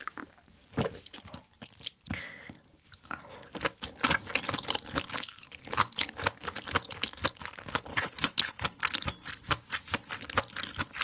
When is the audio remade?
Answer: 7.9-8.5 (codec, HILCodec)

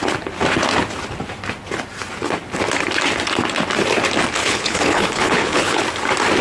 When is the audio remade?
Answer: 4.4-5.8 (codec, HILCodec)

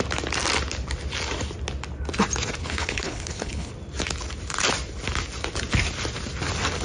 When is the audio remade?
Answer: 2.6-3.7 (codec, HILCodec)

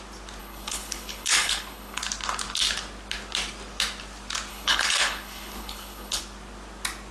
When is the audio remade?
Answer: 0.4-2.0 (codec, HILCodec); 4.5-6.2

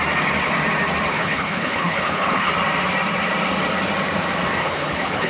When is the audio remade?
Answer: 1.1-2.5 (codec, HILCodec); 4.6-5.3